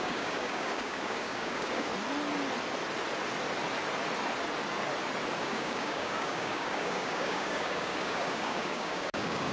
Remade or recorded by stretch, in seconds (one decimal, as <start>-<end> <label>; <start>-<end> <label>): 0.0-1.9 remade; 1.9-5.4 recorded; 5.4-9.5 remade

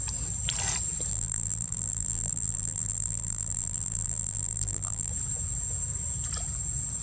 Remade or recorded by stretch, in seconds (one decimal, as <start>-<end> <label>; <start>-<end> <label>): 0.0-1.1 recorded; 1.1-5.1 remade; 5.1-7.0 recorded

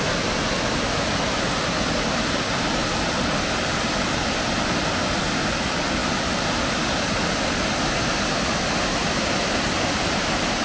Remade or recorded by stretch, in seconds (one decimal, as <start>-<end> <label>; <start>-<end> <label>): 0.0-10.6 recorded

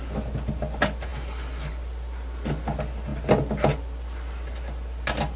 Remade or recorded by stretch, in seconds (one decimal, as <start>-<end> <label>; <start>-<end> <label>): 0.0-5.4 recorded